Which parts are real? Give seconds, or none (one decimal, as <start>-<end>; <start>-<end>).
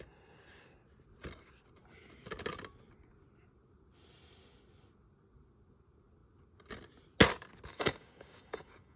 0.0-7.7